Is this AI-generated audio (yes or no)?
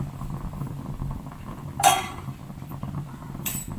yes